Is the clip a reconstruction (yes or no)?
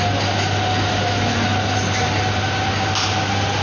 no